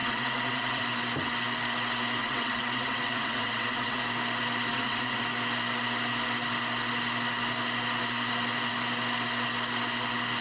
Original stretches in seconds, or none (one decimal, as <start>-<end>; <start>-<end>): 0.8-2.2; 4.0-4.7; 5.2-10.4